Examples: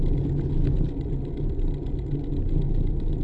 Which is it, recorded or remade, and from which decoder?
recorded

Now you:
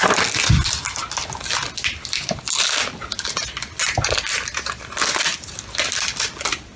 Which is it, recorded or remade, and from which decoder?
recorded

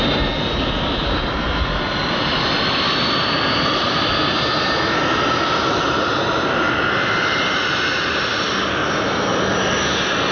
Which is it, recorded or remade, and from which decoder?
recorded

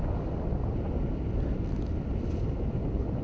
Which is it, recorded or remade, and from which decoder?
recorded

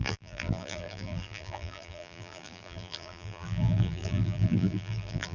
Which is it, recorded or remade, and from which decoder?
remade, vocoder, BigVGAN v2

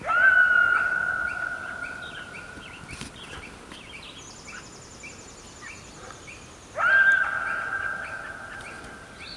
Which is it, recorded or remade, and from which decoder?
recorded